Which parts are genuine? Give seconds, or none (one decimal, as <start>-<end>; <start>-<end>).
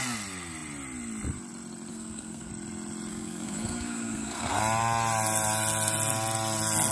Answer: 0.0-1.9; 2.5-3.1; 4.6-6.9